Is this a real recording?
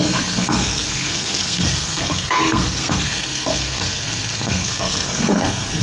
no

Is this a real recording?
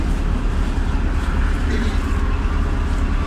yes